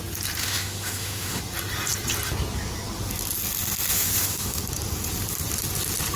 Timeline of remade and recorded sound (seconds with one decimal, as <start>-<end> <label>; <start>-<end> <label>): 0.0-0.4 recorded; 0.4-1.4 remade; 1.4-3.9 recorded; 3.9-4.6 remade; 4.6-6.2 recorded